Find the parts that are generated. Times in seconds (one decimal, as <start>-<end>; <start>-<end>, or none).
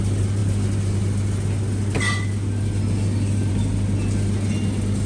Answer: none